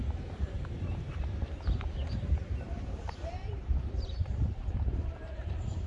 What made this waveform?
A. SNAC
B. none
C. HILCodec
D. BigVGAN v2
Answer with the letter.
D